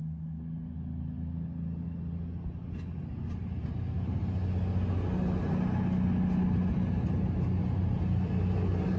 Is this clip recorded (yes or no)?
yes